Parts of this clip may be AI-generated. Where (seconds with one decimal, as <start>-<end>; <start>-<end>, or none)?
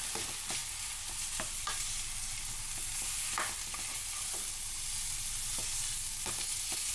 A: none